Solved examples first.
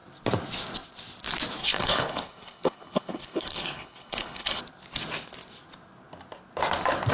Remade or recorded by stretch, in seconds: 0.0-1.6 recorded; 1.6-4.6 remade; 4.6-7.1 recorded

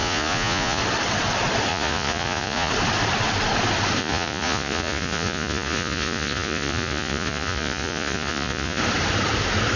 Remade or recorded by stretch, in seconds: 0.0-0.8 remade; 0.8-1.7 recorded; 1.7-2.7 remade; 2.7-4.0 recorded; 4.0-8.8 remade; 8.8-9.8 recorded

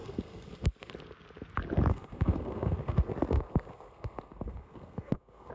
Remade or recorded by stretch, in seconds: 0.0-0.9 remade; 0.9-1.9 recorded; 1.9-5.5 remade

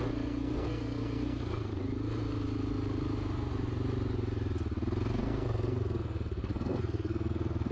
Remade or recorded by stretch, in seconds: 0.0-1.7 remade; 1.7-5.2 recorded; 5.2-7.7 remade

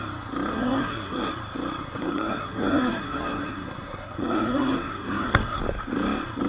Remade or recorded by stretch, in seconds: 0.0-0.5 recorded; 0.5-1.3 remade; 1.3-1.8 recorded; 1.8-5.6 remade; 5.6-6.5 recorded

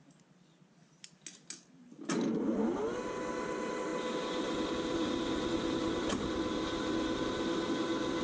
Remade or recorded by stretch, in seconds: 0.0-8.2 recorded

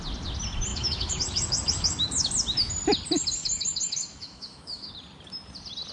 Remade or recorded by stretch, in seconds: 0.0-0.7 recorded; 0.7-2.3 remade; 2.3-3.4 recorded; 3.4-4.9 remade; 4.9-5.9 recorded

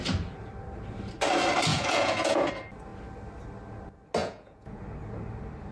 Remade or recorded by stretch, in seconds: 0.0-1.7 recorded; 1.7-2.5 remade; 2.5-4.2 recorded; 4.2-4.8 remade; 4.8-5.7 recorded